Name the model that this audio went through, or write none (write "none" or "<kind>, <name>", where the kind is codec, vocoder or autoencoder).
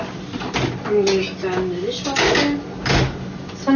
none